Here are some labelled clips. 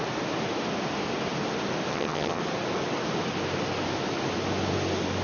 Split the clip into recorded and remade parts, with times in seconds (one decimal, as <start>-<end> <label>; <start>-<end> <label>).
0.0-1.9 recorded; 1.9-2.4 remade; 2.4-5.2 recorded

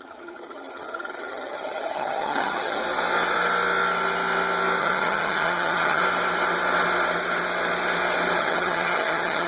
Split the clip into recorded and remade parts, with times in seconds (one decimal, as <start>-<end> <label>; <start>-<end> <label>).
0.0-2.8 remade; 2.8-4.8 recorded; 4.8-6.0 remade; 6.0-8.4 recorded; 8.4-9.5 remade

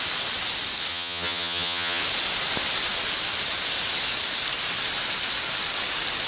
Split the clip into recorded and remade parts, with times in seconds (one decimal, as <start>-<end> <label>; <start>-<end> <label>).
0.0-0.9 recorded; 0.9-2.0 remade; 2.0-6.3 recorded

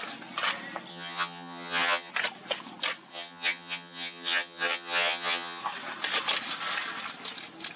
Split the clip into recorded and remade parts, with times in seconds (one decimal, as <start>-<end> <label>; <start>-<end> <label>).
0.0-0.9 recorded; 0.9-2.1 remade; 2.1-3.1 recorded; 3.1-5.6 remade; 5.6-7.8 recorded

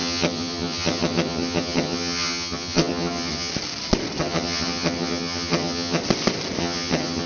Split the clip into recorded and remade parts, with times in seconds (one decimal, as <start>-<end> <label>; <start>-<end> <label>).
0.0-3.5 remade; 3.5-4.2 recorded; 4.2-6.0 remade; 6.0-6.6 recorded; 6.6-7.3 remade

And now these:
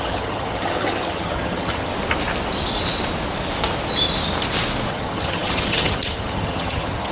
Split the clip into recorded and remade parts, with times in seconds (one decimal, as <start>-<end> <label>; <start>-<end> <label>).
0.0-1.9 remade; 1.9-4.9 recorded; 4.9-7.1 remade

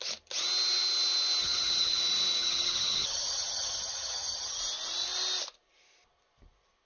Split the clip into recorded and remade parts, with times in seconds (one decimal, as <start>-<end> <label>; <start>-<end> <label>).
0.0-1.4 recorded; 1.4-2.0 remade; 2.0-2.4 recorded; 2.4-4.6 remade; 4.6-6.9 recorded

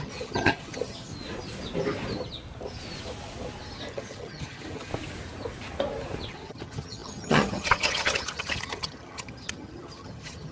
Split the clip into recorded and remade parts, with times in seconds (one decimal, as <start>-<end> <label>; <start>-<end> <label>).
0.0-1.1 remade; 1.1-3.9 recorded; 3.9-4.9 remade; 4.9-6.3 recorded; 6.3-10.5 remade